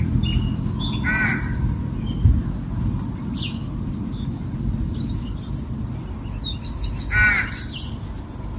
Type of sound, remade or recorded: recorded